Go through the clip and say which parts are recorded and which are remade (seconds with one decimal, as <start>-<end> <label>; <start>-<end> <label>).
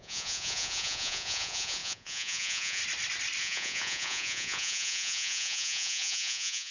0.0-2.8 remade; 2.8-3.4 recorded; 3.4-6.7 remade